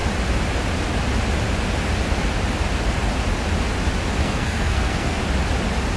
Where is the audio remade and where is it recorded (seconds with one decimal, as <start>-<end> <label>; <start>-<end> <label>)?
0.0-4.2 recorded; 4.2-5.2 remade; 5.2-6.0 recorded